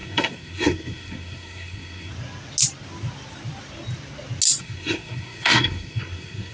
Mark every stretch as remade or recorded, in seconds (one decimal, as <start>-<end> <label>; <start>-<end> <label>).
0.0-2.1 remade; 2.1-4.6 recorded; 4.6-6.5 remade